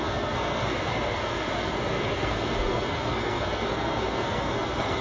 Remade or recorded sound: remade